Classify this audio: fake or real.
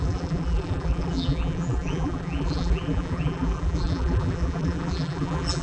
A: fake